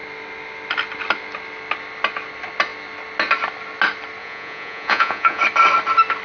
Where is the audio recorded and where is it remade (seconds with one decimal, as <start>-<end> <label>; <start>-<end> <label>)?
0.0-4.2 recorded; 4.2-5.4 remade; 5.4-6.2 recorded